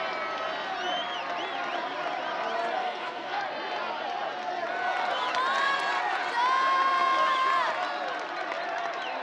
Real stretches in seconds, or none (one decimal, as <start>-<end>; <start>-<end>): 0.0-2.8; 3.4-9.2